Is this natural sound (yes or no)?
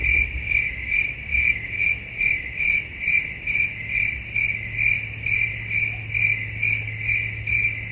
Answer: yes